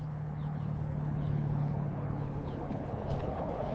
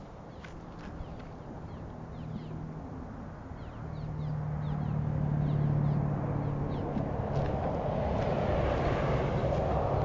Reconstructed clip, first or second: first